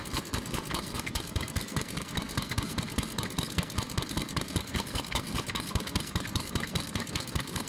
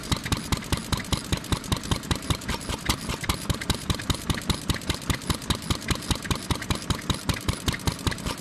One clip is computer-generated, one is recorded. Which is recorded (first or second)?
second